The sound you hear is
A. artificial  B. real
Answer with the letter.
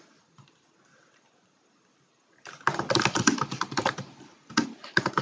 B